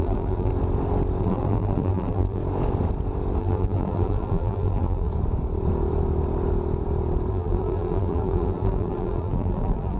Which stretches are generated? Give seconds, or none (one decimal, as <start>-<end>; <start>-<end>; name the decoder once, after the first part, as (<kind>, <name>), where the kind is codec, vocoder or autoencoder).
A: 0.0-0.5 (vocoder, BigVGAN v2); 1.2-2.4; 3.4-5.1; 7.3-10.0